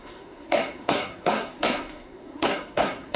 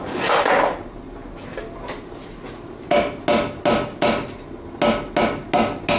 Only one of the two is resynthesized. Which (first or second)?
first